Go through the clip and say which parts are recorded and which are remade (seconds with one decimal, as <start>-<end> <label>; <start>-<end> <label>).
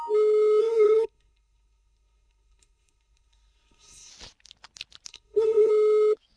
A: 0.0-0.6 recorded; 0.6-4.1 remade; 4.1-5.1 recorded; 5.1-5.7 remade; 5.7-6.4 recorded